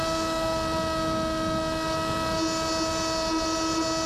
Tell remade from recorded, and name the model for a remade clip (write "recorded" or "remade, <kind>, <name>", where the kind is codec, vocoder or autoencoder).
recorded